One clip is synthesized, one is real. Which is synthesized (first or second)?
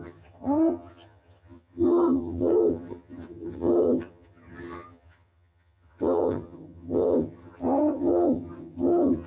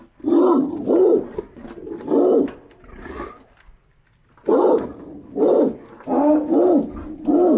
first